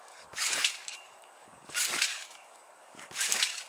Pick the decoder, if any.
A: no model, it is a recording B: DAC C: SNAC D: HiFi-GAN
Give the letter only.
B